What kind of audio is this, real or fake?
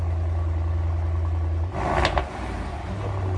real